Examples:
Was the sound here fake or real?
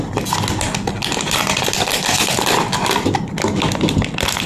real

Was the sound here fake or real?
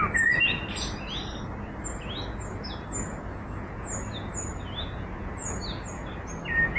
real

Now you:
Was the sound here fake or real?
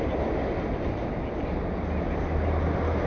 real